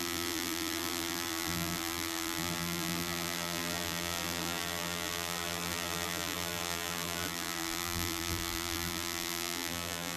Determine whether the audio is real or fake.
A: fake